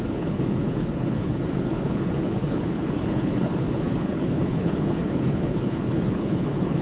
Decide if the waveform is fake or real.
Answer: fake